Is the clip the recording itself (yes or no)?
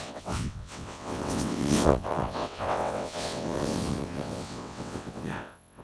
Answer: no